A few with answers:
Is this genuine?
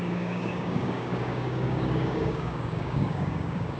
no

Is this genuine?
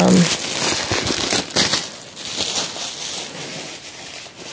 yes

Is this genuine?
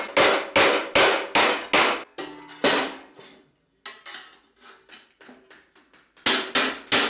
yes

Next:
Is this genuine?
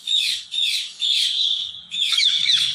no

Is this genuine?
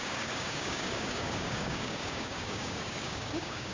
no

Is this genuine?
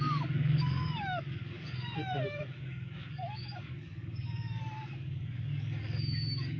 no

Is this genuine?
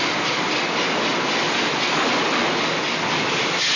yes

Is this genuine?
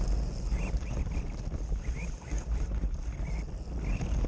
yes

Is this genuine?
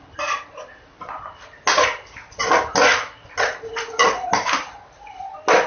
yes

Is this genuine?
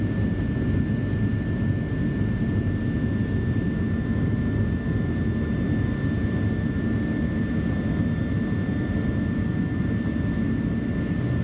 yes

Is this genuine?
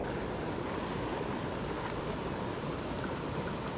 yes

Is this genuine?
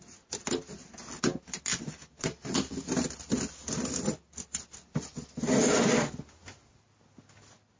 yes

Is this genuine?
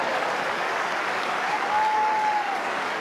no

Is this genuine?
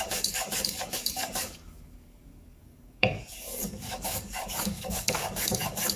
no